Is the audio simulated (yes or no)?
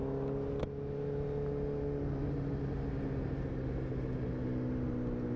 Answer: no